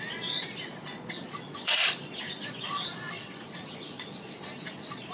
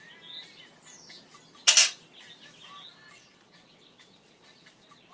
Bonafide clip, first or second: second